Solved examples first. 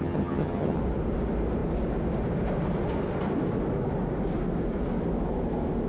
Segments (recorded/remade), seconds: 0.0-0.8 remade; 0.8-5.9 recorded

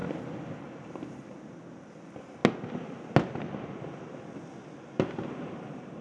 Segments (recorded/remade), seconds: 0.0-0.6 recorded; 0.6-2.4 remade; 2.4-4.8 recorded; 4.8-6.0 remade